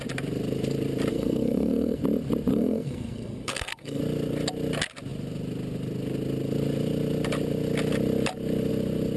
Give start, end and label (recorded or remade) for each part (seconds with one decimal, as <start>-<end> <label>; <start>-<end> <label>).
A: 0.0-1.1 recorded; 1.1-2.0 remade; 2.0-2.5 recorded; 2.5-4.0 remade; 4.0-9.2 recorded